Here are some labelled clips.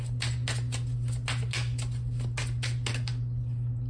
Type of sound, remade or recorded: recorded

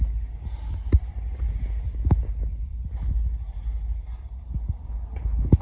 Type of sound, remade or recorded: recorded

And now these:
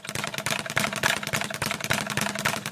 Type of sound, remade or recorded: recorded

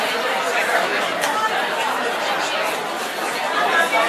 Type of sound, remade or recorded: recorded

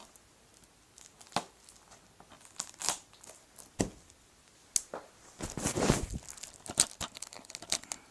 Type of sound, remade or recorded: recorded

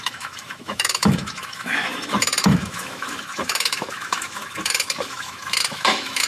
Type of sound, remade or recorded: remade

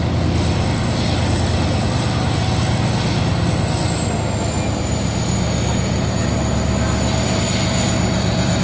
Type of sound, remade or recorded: recorded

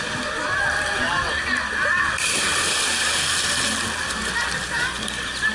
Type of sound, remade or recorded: recorded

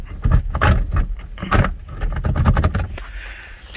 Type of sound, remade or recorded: recorded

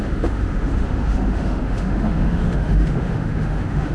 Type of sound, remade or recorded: remade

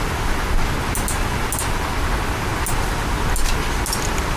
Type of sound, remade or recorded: recorded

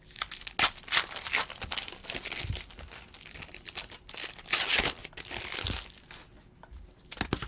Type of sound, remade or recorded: recorded